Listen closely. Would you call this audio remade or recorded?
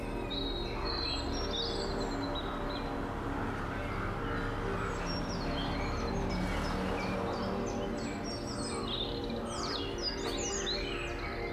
recorded